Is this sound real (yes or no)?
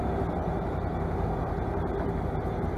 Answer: yes